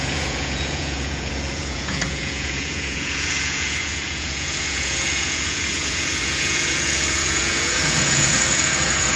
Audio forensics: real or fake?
fake